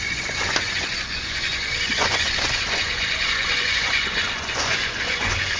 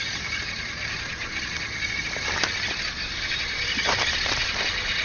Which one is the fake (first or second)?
first